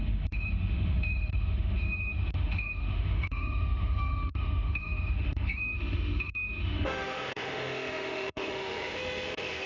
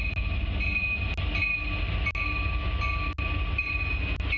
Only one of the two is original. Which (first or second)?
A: second